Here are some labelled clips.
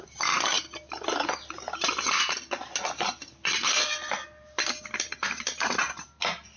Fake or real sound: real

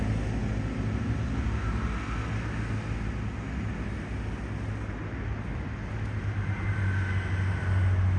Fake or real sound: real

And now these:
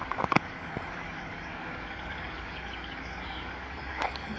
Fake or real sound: fake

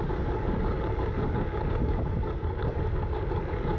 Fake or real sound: fake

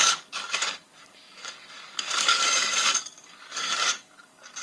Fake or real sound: fake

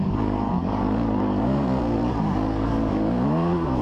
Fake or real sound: fake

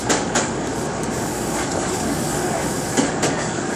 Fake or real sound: fake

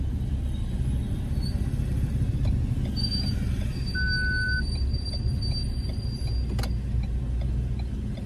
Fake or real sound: real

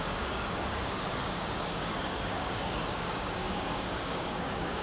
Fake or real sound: fake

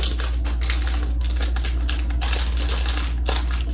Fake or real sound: real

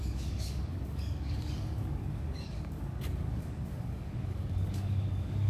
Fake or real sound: fake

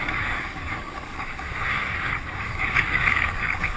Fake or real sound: fake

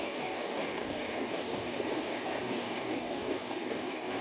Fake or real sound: fake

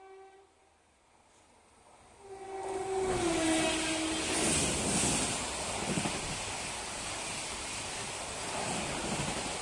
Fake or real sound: real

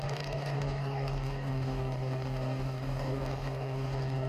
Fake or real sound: fake